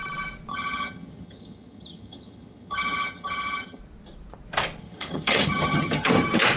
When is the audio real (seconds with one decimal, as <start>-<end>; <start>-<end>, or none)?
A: 0.0-0.5; 3.8-4.8; 6.1-6.6